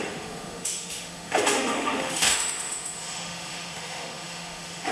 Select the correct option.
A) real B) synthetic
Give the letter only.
B